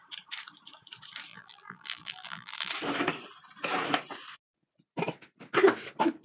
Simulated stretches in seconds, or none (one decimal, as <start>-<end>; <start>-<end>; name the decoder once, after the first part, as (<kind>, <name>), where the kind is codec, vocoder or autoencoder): 1.3-2.7 (vocoder, BigVGAN v2)